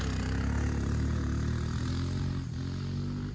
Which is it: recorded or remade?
recorded